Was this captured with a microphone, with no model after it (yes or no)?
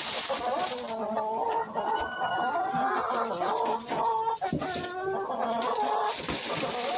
yes